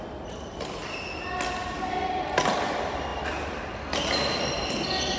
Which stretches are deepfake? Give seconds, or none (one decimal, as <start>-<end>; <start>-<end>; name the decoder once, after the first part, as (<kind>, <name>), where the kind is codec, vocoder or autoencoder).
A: none